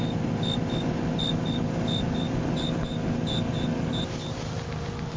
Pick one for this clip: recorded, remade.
recorded